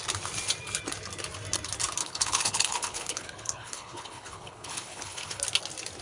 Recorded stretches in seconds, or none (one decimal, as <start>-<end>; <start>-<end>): 0.0-2.0; 5.4-6.0